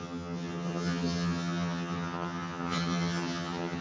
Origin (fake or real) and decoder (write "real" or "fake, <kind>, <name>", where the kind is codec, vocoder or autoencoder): fake, vocoder, HiFi-GAN